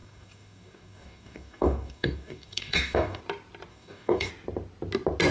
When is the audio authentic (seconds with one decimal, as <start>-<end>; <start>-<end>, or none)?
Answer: 3.2-3.7; 4.3-5.3